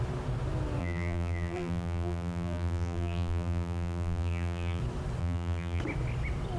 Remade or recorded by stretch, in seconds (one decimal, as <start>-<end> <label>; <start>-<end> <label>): 0.0-0.8 recorded; 0.8-4.8 remade; 4.8-5.2 recorded; 5.2-5.8 remade; 5.8-6.6 recorded